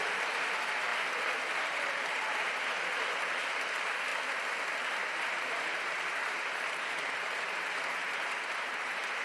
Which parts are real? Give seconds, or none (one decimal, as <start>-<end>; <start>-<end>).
0.9-1.6; 4.1-5.1